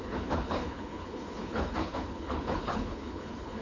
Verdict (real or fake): fake